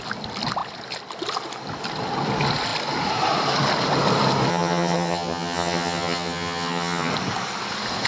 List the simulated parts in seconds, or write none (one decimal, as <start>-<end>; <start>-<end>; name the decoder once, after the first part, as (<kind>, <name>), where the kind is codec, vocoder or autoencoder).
4.5-7.1 (vocoder, HiFi-GAN)